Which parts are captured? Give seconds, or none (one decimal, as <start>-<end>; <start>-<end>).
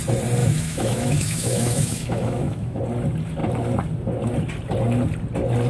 0.0-0.4; 2.8-5.7